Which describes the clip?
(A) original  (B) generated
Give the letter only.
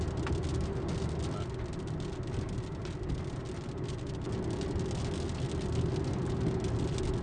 A